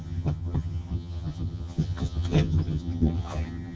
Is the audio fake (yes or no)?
yes